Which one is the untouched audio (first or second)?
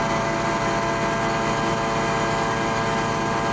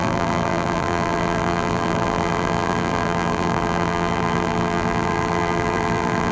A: first